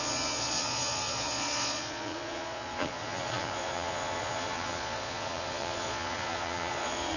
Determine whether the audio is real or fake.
fake